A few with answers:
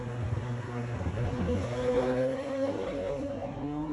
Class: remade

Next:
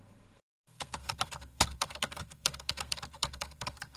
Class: remade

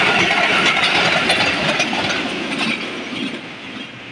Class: recorded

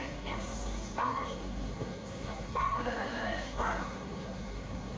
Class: remade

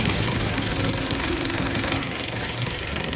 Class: remade